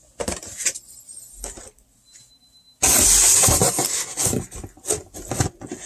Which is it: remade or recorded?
recorded